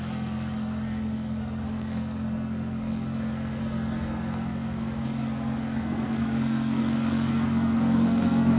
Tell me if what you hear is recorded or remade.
remade